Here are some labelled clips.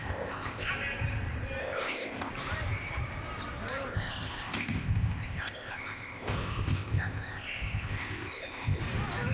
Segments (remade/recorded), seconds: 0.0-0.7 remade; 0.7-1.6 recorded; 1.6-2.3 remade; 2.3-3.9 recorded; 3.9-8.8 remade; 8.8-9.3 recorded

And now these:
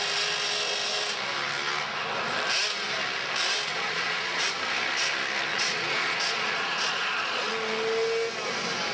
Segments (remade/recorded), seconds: 0.0-3.7 recorded; 3.7-4.4 remade; 4.4-5.5 recorded; 5.5-7.5 remade; 7.5-8.9 recorded

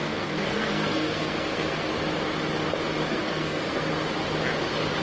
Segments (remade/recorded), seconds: 0.0-1.9 remade; 1.9-3.1 recorded; 3.1-3.9 remade; 3.9-5.0 recorded

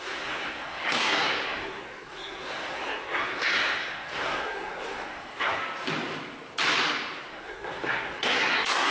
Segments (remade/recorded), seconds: 0.0-5.6 remade; 5.6-7.3 recorded; 7.3-8.9 remade

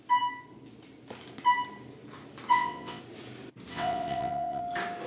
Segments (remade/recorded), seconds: 0.0-2.5 recorded; 2.5-3.0 remade; 3.0-3.7 recorded; 3.7-4.6 remade; 4.6-5.1 recorded

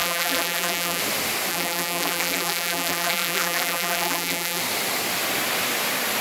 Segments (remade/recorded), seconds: 0.0-1.0 remade; 1.0-1.5 recorded; 1.5-4.6 remade; 4.6-6.2 recorded

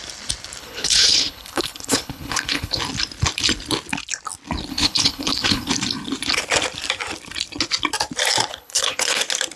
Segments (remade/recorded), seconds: 0.0-0.6 recorded; 0.6-2.8 remade; 2.8-4.7 recorded; 4.7-5.7 remade; 5.7-8.5 recorded; 8.5-9.2 remade; 9.2-9.6 recorded